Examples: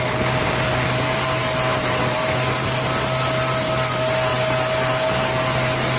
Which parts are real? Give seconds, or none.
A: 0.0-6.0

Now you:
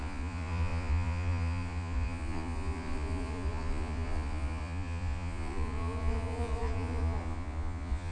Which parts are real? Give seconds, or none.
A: none